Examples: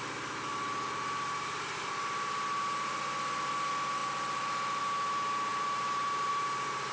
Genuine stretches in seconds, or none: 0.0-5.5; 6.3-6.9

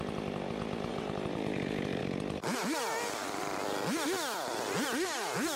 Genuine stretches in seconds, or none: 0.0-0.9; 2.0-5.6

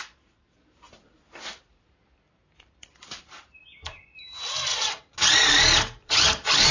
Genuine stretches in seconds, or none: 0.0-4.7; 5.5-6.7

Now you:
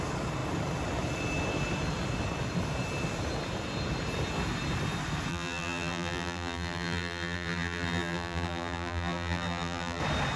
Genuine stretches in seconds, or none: 0.0-5.3; 10.0-10.4

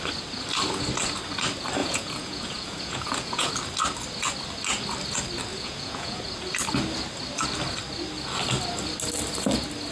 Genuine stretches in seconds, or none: 0.0-1.8; 3.5-5.5; 6.2-9.9

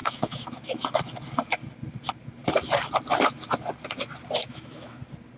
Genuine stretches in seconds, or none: 1.0-4.4; 5.0-5.4

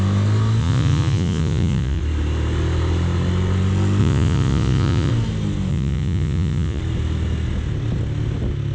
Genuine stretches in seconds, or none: 0.0-0.6; 2.0-4.0; 5.1-5.7; 6.8-8.7